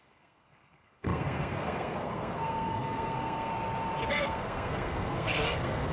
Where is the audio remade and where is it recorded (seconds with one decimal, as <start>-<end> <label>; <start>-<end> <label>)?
0.0-3.5 remade; 3.5-4.1 recorded; 4.1-5.9 remade